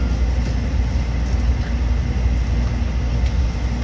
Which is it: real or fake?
real